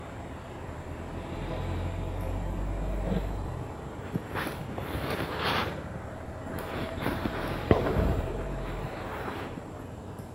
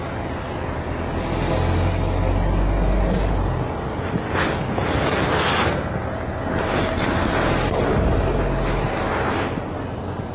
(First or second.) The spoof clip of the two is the first